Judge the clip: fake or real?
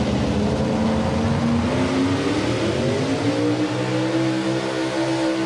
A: real